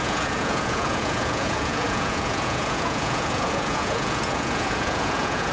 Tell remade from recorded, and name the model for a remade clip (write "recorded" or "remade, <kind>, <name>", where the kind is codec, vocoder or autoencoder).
remade, vocoder, Vocos